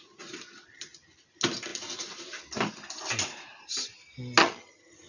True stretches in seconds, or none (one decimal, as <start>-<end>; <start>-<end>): 0.0-4.4